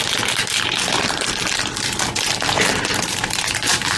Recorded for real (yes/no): yes